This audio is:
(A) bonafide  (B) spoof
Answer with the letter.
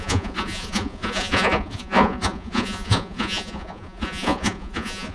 B